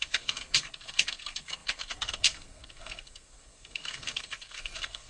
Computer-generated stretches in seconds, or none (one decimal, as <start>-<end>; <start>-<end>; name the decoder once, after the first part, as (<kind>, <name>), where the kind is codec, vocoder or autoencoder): 0.0-5.1 (codec, SNAC)